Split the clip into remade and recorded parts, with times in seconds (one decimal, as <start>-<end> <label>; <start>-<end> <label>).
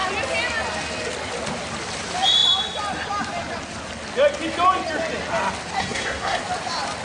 0.0-5.8 recorded; 5.8-6.4 remade; 6.4-7.0 recorded